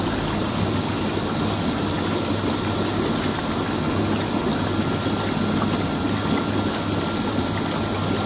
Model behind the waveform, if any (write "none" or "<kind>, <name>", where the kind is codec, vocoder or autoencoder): none